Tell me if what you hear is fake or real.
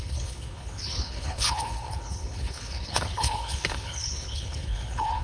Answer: fake